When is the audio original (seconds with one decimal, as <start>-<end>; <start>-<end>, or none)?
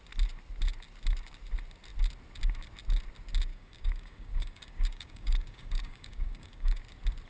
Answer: 0.0-3.5; 6.8-7.3